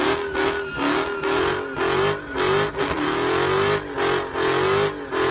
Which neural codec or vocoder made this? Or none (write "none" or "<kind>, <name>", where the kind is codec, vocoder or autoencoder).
none